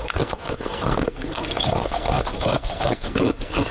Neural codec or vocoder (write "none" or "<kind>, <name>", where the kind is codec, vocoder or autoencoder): codec, SNAC